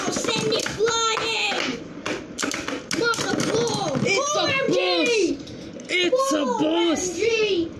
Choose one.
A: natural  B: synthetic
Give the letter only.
A